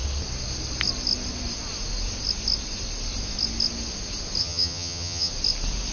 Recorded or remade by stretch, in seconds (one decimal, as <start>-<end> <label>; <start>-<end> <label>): 0.0-4.4 recorded; 4.4-5.3 remade; 5.3-5.9 recorded